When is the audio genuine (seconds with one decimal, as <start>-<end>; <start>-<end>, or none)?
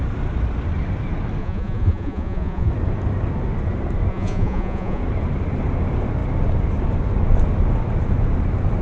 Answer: 0.0-1.4; 2.7-4.1; 5.0-8.8